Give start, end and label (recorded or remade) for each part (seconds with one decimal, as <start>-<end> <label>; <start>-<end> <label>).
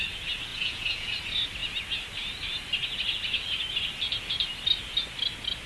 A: 0.0-0.5 recorded; 0.5-1.1 remade; 1.1-5.7 recorded